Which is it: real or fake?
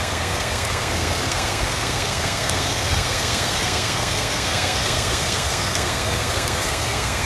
fake